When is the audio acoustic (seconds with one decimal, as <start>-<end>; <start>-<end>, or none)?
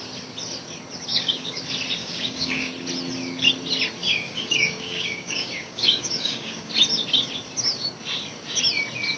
0.0-1.1; 1.6-2.0; 2.7-4.1; 6.7-9.2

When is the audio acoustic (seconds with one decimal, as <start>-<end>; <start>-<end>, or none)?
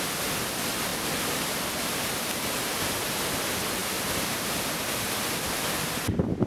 0.0-6.5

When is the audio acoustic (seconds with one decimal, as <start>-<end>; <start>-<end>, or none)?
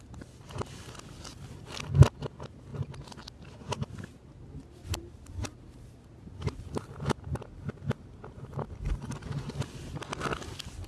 0.0-10.9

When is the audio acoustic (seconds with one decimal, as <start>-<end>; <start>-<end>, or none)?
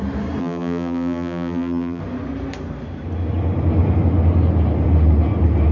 0.0-0.4; 2.0-5.7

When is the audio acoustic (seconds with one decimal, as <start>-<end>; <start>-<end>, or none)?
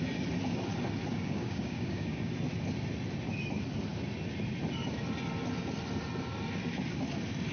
0.0-1.1; 2.3-7.5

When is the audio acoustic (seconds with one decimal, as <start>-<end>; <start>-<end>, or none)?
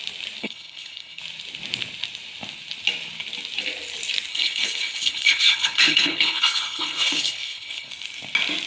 0.0-0.4; 1.2-4.3; 7.9-8.7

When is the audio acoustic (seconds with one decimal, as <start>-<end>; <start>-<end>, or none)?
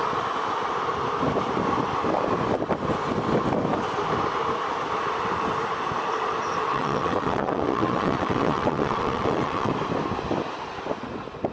0.0-6.7; 9.7-11.5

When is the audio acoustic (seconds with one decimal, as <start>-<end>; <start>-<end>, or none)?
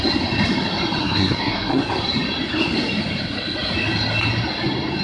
0.0-1.0; 1.8-5.0